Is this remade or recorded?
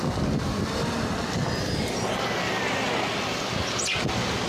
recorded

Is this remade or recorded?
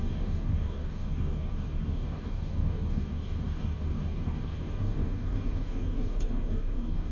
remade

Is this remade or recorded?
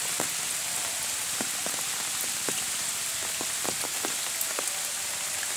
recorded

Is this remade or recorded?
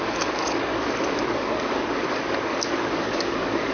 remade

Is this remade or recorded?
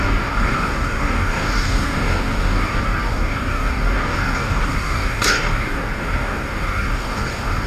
remade